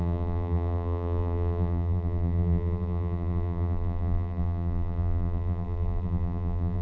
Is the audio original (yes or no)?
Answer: no